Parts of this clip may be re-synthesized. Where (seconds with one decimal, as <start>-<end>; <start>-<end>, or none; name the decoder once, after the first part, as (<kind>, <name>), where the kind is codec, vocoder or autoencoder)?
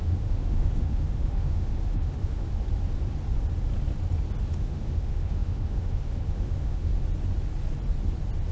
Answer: 0.0-2.4 (autoencoder, DAC-VAE); 4.5-6.9